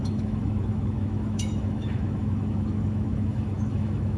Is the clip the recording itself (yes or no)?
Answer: no